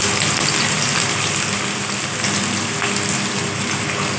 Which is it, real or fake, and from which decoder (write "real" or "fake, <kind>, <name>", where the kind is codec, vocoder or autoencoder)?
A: real